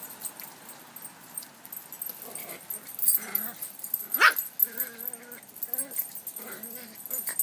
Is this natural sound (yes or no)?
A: yes